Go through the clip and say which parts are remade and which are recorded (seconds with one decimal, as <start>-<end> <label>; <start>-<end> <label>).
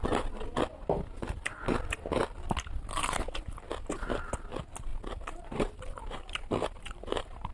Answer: 0.0-4.9 recorded; 4.9-7.5 remade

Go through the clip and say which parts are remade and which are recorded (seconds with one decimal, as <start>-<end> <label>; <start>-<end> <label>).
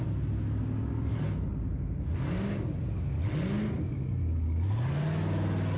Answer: 0.0-5.8 recorded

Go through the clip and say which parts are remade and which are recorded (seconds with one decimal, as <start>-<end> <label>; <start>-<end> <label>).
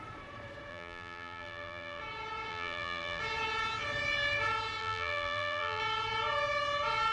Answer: 0.0-0.7 recorded; 0.7-2.0 remade; 2.0-2.5 recorded; 2.5-3.2 remade; 3.2-4.8 recorded; 4.8-5.8 remade; 5.8-7.1 recorded